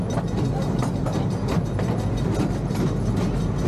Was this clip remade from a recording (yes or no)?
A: no